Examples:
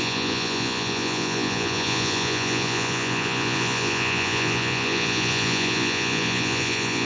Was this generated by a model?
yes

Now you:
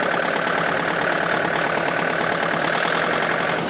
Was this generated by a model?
no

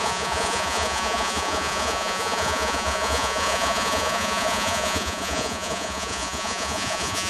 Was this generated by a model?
yes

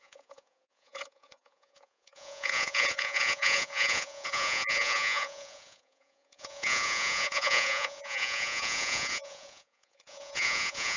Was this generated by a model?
yes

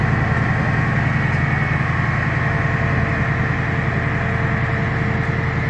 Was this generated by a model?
no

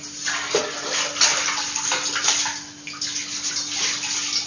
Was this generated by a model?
no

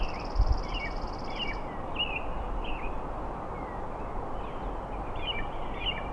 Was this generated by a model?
no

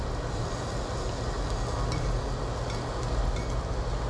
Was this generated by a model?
no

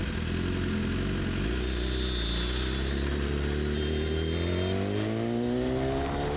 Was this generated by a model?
no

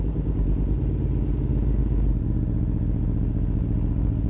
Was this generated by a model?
no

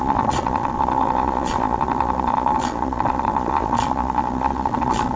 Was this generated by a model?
yes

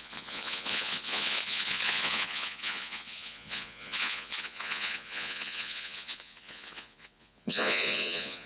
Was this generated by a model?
yes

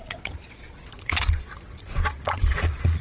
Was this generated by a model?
yes